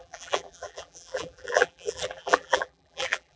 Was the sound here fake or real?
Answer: fake